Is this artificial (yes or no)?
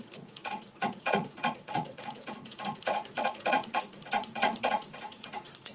yes